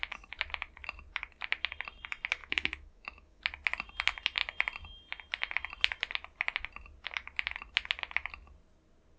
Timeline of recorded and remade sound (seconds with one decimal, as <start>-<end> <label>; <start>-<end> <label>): 0.0-2.4 recorded; 2.4-3.4 remade; 3.4-9.2 recorded